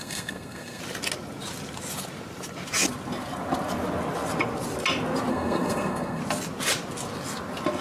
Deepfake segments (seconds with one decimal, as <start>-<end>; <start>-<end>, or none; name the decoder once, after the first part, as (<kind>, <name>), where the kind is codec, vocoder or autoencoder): 0.0-0.8 (codec, SNAC); 5.3-6.2